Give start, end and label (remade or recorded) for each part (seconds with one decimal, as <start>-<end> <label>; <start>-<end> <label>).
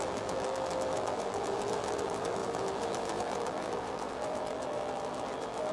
0.0-5.7 remade